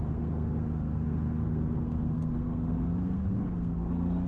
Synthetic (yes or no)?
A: yes